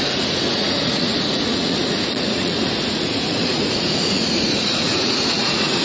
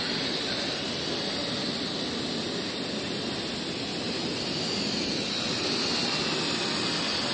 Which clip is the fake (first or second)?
first